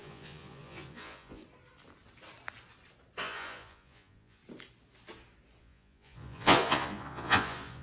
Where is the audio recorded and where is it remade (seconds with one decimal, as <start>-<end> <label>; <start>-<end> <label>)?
0.0-1.4 remade; 1.4-3.2 recorded; 3.2-4.4 remade; 4.4-5.6 recorded; 5.6-7.8 remade